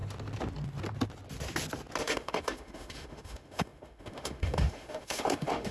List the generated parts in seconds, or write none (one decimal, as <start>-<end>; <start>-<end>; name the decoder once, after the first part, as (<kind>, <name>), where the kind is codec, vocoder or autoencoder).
2.0-5.7 (autoencoder, DAC-VAE)